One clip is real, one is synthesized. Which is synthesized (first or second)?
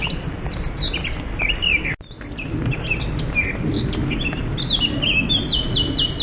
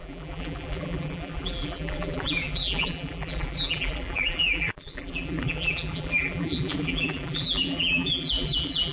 second